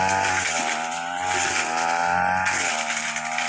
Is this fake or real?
real